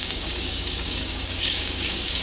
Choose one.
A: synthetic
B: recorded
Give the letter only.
A